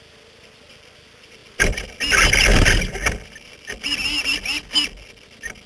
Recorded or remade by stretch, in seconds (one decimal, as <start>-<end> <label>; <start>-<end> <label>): 0.0-5.7 recorded